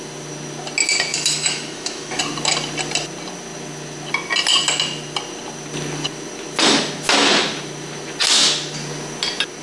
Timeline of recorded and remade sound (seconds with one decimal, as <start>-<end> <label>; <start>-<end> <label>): 0.0-1.1 recorded; 1.1-2.2 remade; 2.2-9.6 recorded